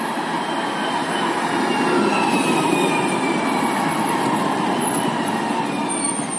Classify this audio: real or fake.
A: real